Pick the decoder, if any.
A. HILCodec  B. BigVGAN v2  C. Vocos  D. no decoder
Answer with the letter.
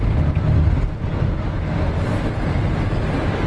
D